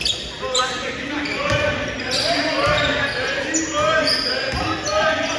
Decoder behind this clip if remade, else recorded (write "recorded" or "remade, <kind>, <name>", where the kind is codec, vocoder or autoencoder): recorded